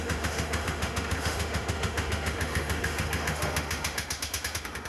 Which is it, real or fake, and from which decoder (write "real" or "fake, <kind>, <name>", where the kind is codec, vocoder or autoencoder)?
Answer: fake, autoencoder, DAC-VAE